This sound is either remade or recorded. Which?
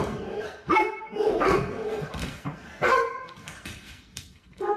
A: remade